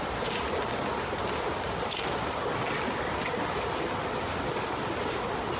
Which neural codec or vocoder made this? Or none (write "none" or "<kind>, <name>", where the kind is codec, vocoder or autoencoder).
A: none